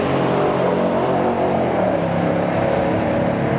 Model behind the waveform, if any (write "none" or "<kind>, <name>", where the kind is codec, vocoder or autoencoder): vocoder, BigVGAN v2